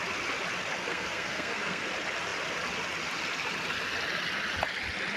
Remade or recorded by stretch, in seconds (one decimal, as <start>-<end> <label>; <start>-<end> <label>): 0.0-0.8 recorded; 0.8-1.9 remade; 1.9-5.2 recorded